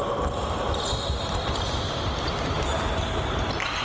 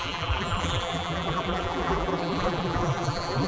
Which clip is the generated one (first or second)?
second